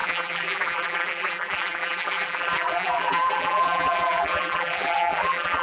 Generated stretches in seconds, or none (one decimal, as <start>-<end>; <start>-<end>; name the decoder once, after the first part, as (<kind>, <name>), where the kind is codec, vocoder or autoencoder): 0.0-5.6 (vocoder, BigVGAN v2)